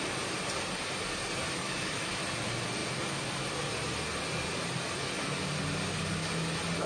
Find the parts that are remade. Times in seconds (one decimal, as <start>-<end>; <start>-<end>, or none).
1.6-2.2